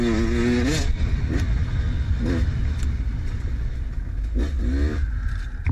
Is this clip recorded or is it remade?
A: recorded